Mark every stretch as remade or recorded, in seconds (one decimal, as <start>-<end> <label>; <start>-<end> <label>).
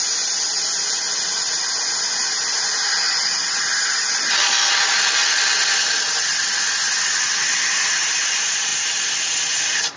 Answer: 0.0-10.0 recorded